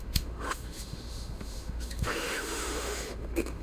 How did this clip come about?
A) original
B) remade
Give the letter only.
B